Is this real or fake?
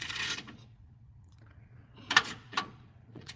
fake